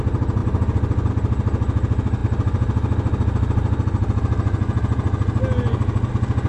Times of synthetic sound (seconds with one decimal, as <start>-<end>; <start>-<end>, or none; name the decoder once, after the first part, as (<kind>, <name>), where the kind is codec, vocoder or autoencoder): none